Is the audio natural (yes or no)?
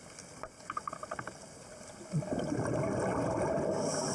yes